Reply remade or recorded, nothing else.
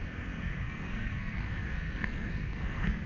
remade